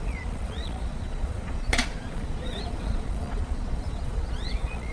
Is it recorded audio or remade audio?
remade